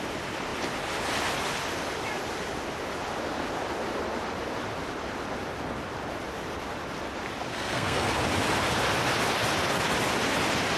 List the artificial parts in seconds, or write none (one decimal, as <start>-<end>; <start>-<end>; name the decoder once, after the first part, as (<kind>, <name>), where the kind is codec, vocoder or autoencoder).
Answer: 7.5-8.1 (codec, SNAC)